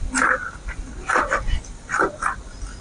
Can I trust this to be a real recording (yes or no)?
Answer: yes